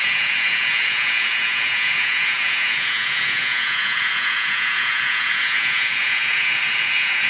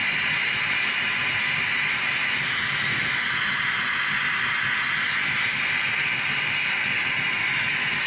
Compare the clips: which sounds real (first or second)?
second